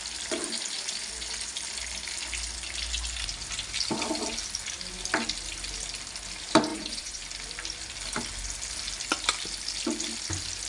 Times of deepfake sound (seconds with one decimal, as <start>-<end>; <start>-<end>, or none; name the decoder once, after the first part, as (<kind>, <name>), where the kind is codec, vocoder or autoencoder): 6.7-7.2 (vocoder, Vocos)